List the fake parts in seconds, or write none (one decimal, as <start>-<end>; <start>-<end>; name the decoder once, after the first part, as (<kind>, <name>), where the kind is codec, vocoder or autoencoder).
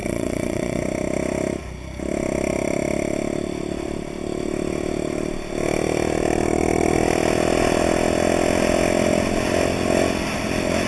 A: 0.0-0.8 (vocoder, WaveNeXt)